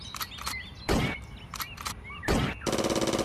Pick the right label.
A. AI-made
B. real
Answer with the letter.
B